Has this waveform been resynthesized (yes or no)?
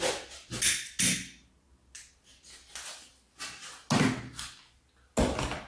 no